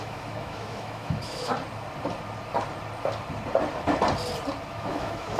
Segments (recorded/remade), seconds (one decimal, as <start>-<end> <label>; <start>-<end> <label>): 0.0-1.5 remade; 1.5-4.7 recorded; 4.7-5.4 remade